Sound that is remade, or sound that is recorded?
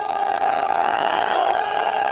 remade